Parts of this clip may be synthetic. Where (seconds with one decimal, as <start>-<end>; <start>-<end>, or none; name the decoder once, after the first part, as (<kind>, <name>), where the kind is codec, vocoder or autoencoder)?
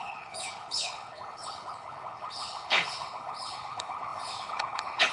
0.0-5.1 (codec, HILCodec)